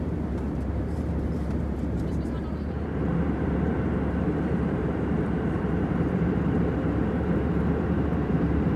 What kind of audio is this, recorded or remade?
remade